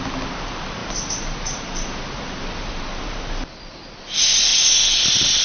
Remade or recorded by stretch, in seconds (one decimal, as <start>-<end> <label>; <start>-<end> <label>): 0.0-5.4 recorded